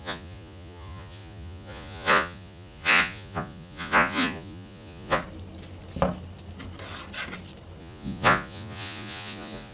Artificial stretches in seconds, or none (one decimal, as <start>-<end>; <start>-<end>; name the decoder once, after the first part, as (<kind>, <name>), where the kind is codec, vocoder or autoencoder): 0.0-5.2 (vocoder, Vocos); 7.8-9.7